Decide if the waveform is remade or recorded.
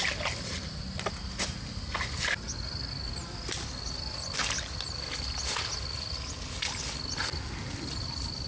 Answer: recorded